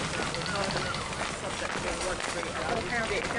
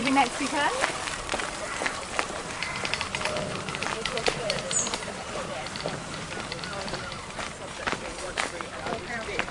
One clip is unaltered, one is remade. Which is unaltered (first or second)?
first